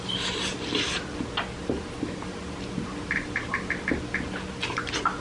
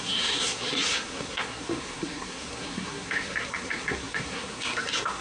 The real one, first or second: first